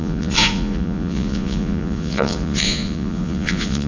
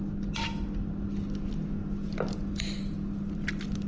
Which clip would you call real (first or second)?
second